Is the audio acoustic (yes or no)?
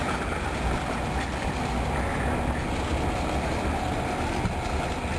yes